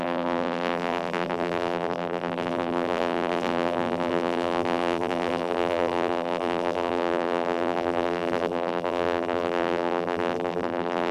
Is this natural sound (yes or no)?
no